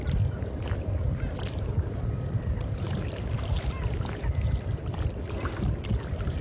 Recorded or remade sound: recorded